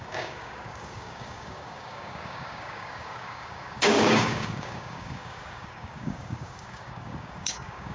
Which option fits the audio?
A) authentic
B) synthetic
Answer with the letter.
B